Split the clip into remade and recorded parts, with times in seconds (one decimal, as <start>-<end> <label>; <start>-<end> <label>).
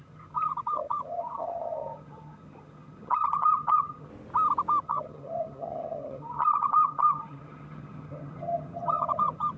0.0-4.1 remade; 4.1-4.8 recorded; 4.8-9.6 remade